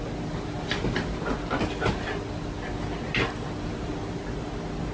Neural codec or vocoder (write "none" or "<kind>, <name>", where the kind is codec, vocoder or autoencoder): none